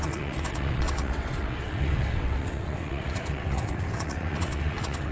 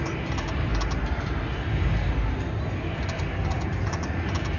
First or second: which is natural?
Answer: second